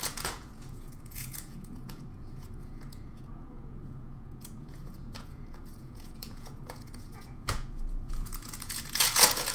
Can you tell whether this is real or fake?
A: fake